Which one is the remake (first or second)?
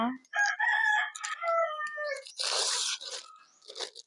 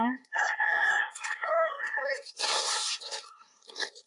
second